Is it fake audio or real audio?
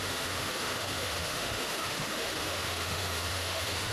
fake